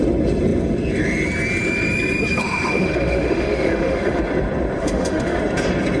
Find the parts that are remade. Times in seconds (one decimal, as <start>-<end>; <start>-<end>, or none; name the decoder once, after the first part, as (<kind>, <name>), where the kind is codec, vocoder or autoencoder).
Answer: 2.4-4.2 (autoencoder, DAC-VAE); 4.8-5.4